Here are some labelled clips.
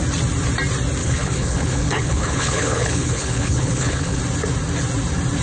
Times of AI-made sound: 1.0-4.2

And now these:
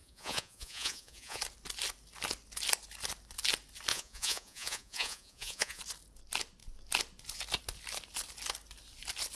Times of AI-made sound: 0.0-1.4; 3.9-5.8

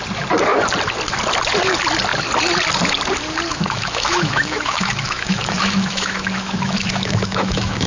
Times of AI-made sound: 3.5-7.9

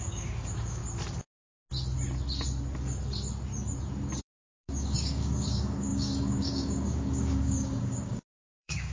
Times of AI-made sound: 0.0-0.8; 4.2-8.9

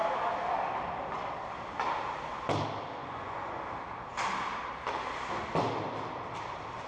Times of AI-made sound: 3.0-3.6

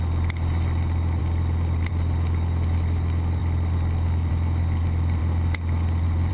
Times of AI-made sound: none

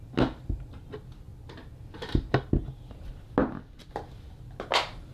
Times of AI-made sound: 3.4-3.9